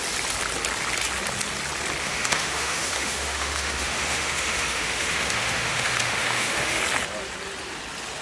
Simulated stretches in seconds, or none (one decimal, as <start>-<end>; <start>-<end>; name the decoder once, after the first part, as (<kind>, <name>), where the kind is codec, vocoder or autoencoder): 2.0-6.8 (autoencoder, DAC-VAE)